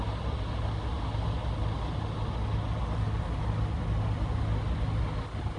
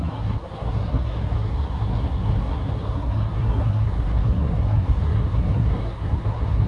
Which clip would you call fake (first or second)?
second